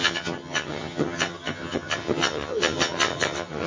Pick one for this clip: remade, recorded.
remade